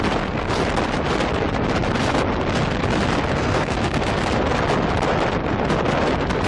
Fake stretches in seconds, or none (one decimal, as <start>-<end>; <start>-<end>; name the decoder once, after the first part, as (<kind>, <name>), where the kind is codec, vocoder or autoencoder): 3.3-4.1 (codec, SNAC)